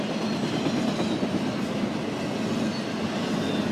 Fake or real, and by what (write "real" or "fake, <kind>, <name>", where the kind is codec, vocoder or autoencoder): real